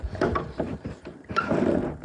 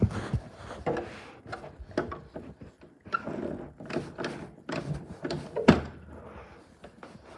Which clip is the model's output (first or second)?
first